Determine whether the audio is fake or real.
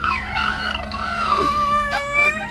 fake